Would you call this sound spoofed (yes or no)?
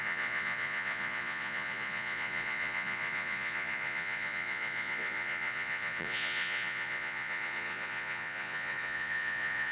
yes